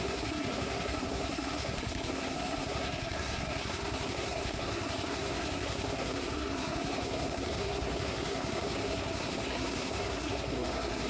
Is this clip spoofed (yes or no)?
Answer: yes